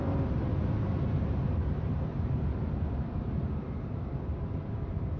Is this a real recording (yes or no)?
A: no